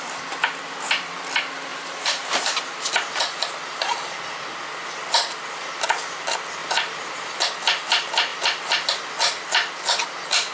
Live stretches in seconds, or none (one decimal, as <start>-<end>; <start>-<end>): 0.0-1.7; 4.2-6.6; 7.4-10.5